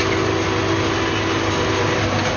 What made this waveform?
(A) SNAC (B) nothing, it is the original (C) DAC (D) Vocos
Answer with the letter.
B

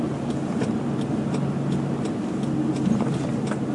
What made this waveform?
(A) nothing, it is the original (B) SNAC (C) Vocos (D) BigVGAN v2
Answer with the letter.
A